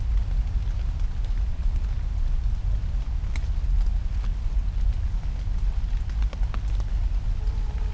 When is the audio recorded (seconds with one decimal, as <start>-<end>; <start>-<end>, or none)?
0.0-7.9